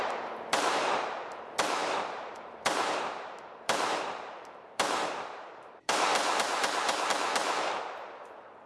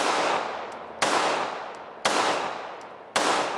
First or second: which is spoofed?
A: first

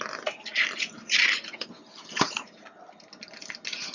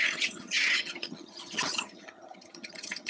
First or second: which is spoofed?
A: second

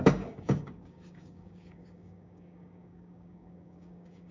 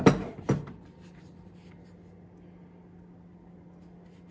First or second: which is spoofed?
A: first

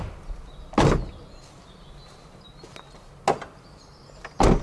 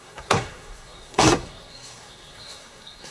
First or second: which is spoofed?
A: second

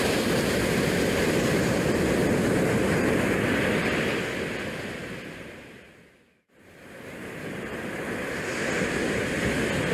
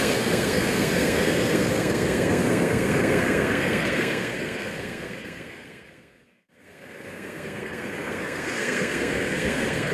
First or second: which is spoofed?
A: second